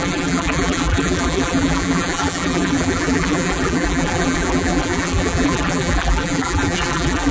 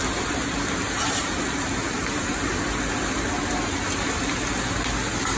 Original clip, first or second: second